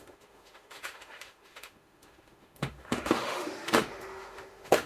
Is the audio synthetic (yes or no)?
yes